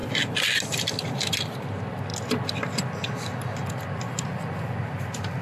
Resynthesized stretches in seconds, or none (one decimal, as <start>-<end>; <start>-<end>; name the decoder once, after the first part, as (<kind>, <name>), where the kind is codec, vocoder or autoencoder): none